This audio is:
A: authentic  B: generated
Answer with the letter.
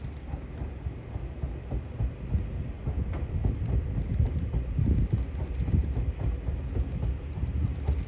A